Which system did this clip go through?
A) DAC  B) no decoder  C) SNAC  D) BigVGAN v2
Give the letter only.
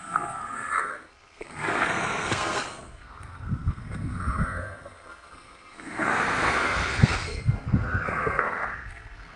C